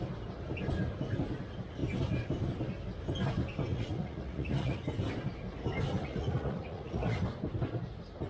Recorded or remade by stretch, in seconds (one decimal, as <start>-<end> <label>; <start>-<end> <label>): 0.0-3.7 recorded; 3.7-4.8 remade; 4.8-6.0 recorded; 6.0-7.2 remade; 7.2-8.3 recorded